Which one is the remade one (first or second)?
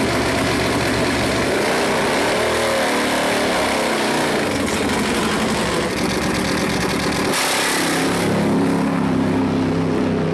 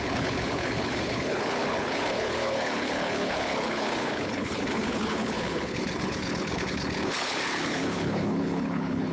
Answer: second